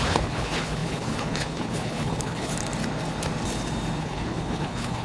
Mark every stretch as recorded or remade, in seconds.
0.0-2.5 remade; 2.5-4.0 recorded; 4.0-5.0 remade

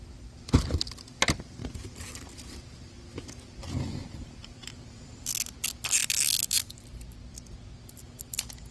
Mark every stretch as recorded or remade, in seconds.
0.0-4.0 recorded; 4.0-5.3 remade; 5.3-8.7 recorded